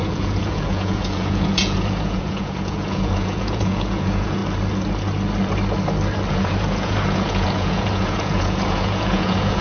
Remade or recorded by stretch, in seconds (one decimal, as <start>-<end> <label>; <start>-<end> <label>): 0.0-4.4 remade; 4.4-6.3 recorded; 6.3-9.6 remade